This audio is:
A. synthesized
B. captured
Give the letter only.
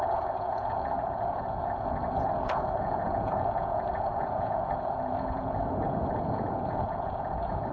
A